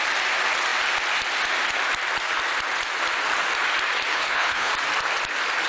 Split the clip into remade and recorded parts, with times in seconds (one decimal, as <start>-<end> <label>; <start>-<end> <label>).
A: 0.0-4.1 recorded; 4.1-4.7 remade; 4.7-5.7 recorded